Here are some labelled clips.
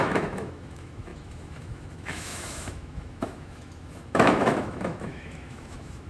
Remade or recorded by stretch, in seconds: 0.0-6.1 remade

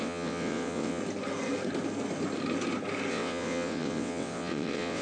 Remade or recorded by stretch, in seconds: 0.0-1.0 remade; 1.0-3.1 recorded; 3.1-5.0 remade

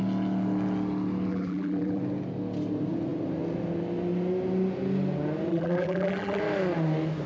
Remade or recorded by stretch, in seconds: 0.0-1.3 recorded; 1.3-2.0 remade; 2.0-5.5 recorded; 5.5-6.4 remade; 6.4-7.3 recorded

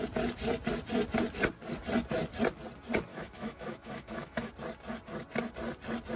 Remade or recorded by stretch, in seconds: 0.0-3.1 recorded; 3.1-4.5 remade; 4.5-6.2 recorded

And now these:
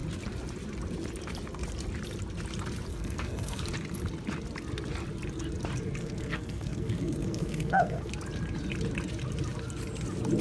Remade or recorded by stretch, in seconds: 0.0-2.9 recorded; 2.9-3.6 remade; 3.6-6.0 recorded; 6.0-8.1 remade; 8.1-10.4 recorded

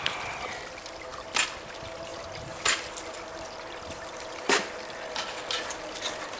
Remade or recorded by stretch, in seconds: 0.0-2.1 recorded; 2.1-5.9 remade; 5.9-6.4 recorded